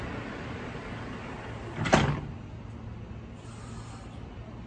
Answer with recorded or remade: recorded